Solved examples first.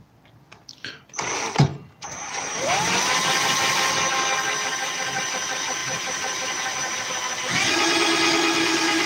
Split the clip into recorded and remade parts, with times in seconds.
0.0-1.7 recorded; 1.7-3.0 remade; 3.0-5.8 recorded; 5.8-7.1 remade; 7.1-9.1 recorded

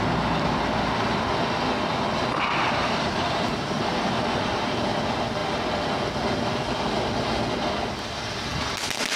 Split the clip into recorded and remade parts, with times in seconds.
0.0-2.8 recorded; 2.8-4.9 remade; 4.9-9.2 recorded

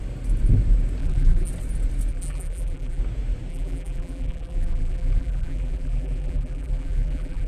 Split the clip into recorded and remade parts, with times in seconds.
0.0-1.0 recorded; 1.0-1.5 remade; 1.5-2.1 recorded; 2.1-3.0 remade; 3.0-3.5 recorded; 3.5-7.5 remade

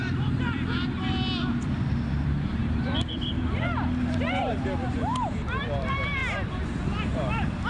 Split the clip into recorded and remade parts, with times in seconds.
0.0-6.2 remade; 6.2-7.3 recorded; 7.3-7.7 remade

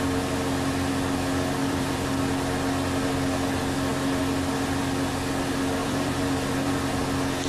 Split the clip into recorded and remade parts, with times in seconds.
0.0-1.6 recorded; 1.6-2.1 remade; 2.1-5.8 recorded; 5.8-7.0 remade; 7.0-7.5 recorded